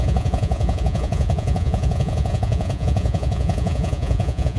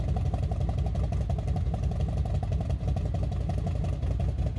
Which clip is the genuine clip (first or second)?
second